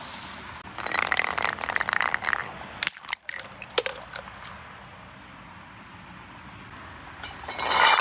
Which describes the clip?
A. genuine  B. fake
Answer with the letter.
A